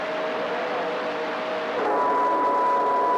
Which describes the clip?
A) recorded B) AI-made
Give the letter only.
A